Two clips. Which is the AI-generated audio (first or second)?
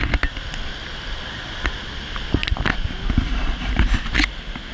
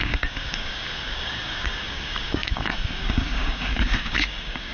second